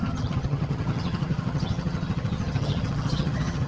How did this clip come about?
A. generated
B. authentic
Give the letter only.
A